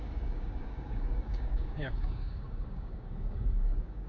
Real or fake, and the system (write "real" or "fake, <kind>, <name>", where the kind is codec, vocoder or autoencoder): fake, codec, DAC